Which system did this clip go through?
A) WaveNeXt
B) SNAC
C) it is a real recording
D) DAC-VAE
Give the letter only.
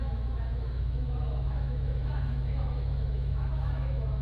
D